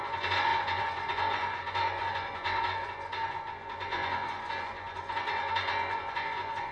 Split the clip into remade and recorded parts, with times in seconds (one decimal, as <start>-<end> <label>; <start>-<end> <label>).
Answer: 0.0-6.7 remade